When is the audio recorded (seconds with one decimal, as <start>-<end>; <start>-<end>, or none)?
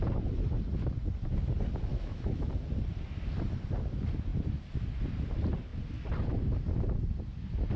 0.0-1.9; 2.5-7.8